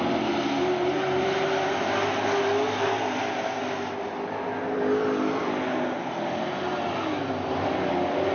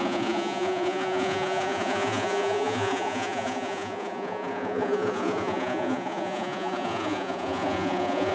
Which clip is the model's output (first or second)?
second